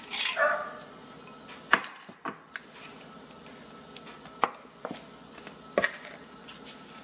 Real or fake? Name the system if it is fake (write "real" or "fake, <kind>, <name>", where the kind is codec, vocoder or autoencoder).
real